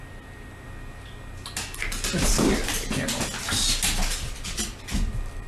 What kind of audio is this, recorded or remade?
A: recorded